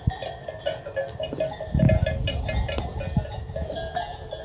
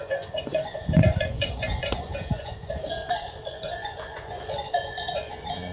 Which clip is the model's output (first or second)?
second